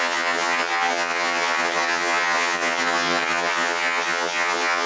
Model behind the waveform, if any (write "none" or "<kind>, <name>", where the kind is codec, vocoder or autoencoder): vocoder, HiFi-GAN